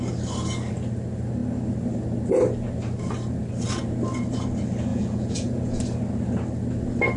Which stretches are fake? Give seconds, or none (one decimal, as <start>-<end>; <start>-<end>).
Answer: 4.9-5.8